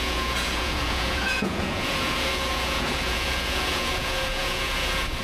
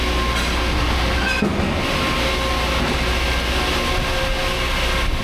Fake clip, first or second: first